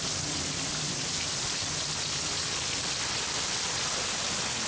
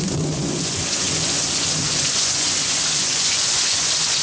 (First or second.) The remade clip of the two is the second